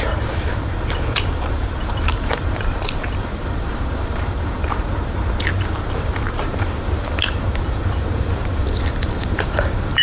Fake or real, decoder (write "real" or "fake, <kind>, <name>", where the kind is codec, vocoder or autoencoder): fake, vocoder, BigVGAN v2